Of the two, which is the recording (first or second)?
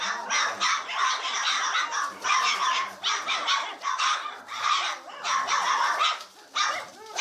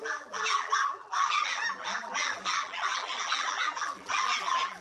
first